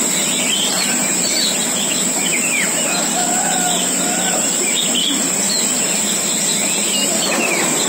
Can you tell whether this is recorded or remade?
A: remade